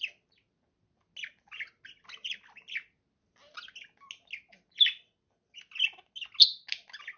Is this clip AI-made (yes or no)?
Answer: no